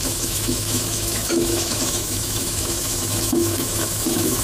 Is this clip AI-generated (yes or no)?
yes